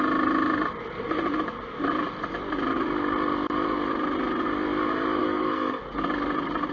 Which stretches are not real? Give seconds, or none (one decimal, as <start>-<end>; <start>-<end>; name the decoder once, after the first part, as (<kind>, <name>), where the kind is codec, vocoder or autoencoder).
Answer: 5.2-5.8 (codec, SNAC)